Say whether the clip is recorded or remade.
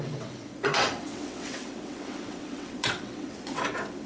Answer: remade